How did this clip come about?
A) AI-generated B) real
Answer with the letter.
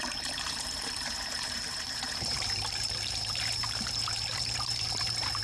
A